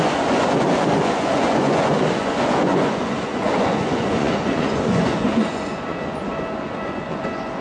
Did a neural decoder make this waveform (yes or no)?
yes